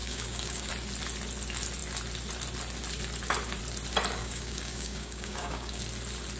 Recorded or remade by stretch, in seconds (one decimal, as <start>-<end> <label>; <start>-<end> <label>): 0.0-0.7 remade; 0.7-4.2 recorded; 4.2-5.8 remade; 5.8-6.4 recorded